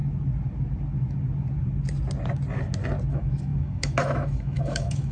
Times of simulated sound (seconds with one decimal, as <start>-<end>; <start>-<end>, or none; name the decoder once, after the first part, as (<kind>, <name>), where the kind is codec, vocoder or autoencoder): 3.1-5.1 (autoencoder, DAC-VAE)